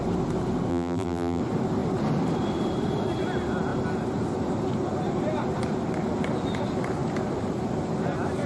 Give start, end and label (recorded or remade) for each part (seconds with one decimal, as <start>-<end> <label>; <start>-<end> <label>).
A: 0.0-0.7 recorded; 0.7-1.4 remade; 1.4-8.5 recorded